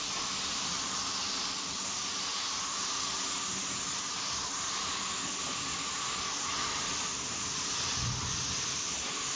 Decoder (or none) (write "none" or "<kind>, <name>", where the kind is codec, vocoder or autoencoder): none